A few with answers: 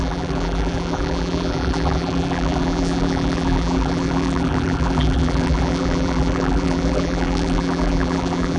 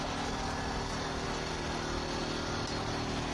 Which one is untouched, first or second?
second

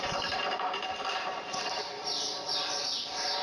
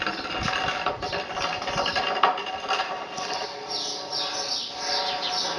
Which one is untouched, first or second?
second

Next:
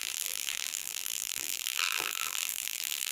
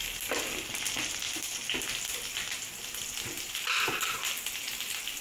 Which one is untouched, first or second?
second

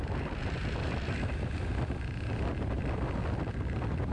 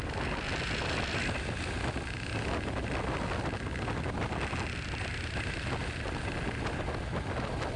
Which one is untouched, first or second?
second